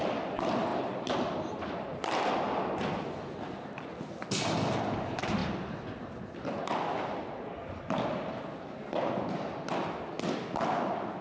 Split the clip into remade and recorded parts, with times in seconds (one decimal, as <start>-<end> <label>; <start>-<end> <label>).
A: 0.0-11.2 recorded